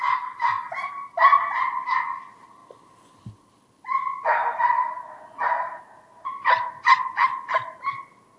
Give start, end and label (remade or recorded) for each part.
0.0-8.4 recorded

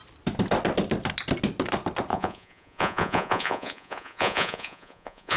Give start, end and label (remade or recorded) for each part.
0.0-2.1 recorded; 2.1-5.4 remade

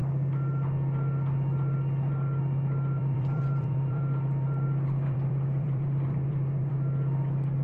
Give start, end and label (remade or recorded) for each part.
0.0-3.0 recorded; 3.0-6.7 remade; 6.7-7.6 recorded

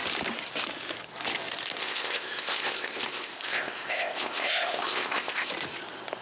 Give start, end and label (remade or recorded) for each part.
0.0-1.8 recorded; 1.8-5.5 remade; 5.5-6.2 recorded

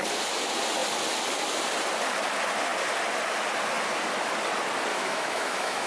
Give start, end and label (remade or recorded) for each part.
0.0-4.9 recorded; 4.9-5.9 remade

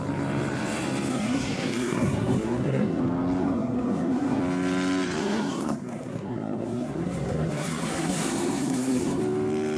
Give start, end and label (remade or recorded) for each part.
0.0-1.1 recorded; 1.1-3.0 remade; 3.0-3.4 recorded; 3.4-4.4 remade; 4.4-5.2 recorded; 5.2-9.2 remade; 9.2-9.8 recorded